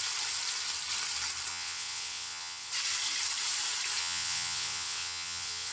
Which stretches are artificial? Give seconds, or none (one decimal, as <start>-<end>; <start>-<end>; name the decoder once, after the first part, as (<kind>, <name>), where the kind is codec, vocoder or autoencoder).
1.5-2.7 (vocoder, WaveNeXt); 4.0-5.7